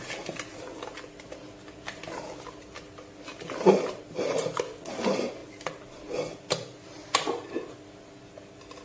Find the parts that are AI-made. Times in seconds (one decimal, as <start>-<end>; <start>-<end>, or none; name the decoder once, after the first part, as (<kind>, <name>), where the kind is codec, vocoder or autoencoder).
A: none